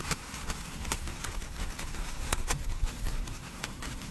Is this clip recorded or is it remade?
remade